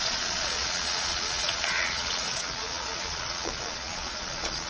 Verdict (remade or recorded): remade